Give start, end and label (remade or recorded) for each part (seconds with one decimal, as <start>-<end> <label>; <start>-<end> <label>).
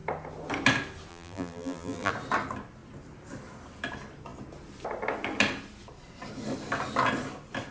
0.0-1.1 recorded; 1.1-2.1 remade; 2.1-7.7 recorded